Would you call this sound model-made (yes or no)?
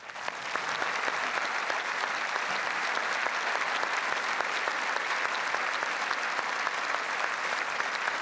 no